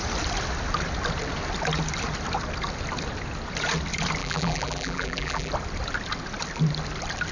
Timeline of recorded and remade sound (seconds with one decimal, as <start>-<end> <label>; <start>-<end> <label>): 0.0-4.2 recorded; 4.2-5.5 remade; 5.5-7.3 recorded